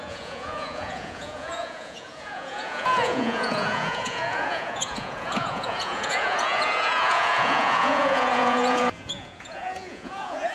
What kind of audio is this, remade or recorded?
remade